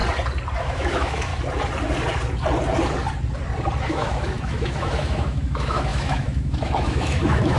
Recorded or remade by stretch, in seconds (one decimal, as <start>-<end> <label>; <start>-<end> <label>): 0.0-0.6 recorded; 0.6-1.3 remade; 1.3-3.8 recorded; 3.8-7.6 remade